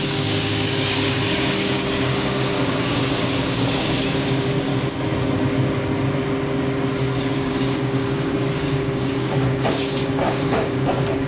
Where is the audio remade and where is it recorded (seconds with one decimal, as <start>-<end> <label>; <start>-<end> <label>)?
0.0-4.7 remade; 4.7-7.3 recorded; 7.3-11.3 remade